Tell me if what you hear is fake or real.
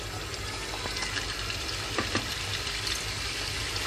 real